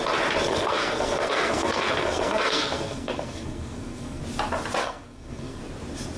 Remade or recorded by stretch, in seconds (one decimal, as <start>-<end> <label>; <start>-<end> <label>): 0.0-0.5 recorded; 0.5-4.2 remade; 4.2-4.8 recorded; 4.8-5.6 remade; 5.6-6.2 recorded